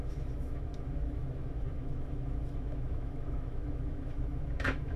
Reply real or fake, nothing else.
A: fake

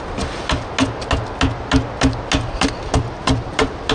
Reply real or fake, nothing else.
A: real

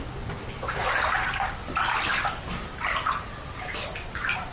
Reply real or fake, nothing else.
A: real